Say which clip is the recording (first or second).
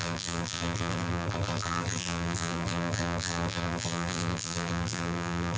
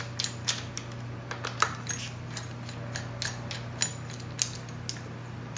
second